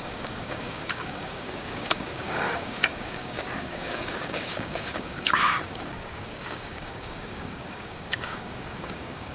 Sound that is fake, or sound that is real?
fake